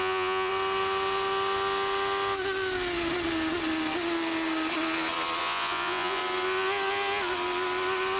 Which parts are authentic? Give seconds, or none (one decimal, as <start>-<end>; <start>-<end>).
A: 0.5-5.4; 6.2-8.2